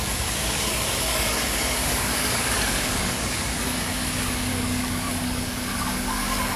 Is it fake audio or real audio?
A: fake